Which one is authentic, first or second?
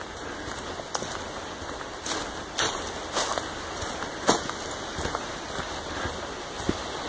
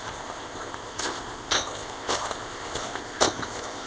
first